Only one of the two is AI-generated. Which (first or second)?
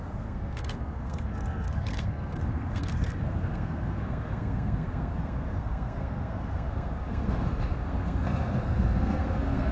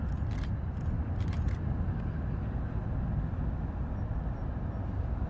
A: first